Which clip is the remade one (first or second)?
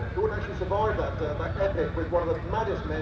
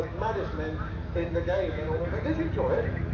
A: second